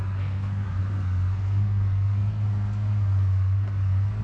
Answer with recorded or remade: remade